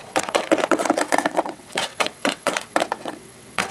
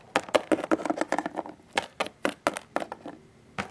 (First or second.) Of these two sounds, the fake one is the first